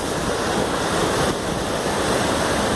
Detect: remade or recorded recorded